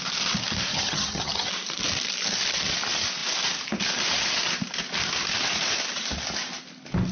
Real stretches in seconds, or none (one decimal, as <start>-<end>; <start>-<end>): 0.0-0.7; 1.5-7.1